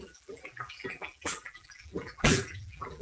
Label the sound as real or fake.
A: fake